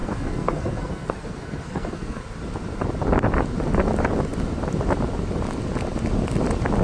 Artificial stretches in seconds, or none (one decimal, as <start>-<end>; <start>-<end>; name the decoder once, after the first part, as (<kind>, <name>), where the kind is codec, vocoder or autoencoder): 0.0-2.2 (codec, SNAC)